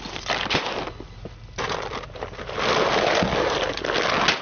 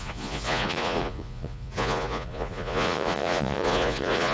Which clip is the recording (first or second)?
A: first